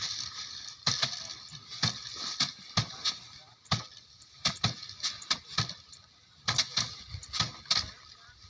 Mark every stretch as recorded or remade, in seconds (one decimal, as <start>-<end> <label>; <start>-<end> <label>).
0.0-8.5 recorded